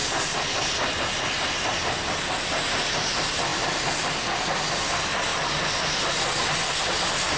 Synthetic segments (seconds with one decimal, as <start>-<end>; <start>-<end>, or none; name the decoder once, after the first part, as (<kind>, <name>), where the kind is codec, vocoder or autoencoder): none